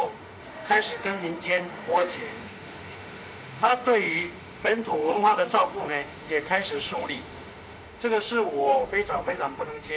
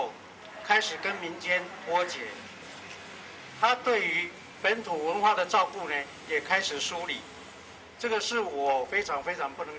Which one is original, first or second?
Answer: second